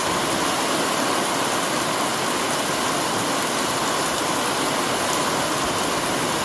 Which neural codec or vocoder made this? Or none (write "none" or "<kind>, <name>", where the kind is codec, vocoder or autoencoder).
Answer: vocoder, BigVGAN v2